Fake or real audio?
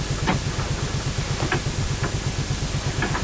real